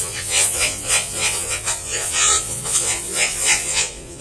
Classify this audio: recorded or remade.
remade